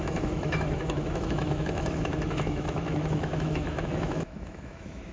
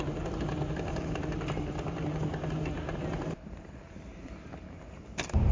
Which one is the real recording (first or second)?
second